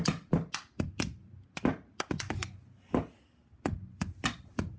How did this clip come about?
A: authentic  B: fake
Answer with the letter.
A